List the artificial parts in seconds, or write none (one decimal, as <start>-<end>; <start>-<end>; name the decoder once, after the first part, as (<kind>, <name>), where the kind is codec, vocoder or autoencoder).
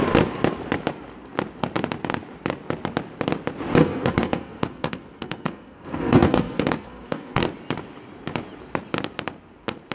3.8-7.4 (codec, SNAC)